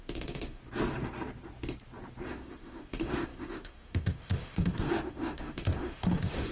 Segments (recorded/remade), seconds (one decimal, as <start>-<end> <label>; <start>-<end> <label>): 0.0-0.6 remade; 0.6-2.3 recorded; 2.3-6.5 remade